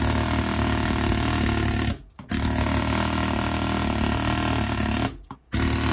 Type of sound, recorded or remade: recorded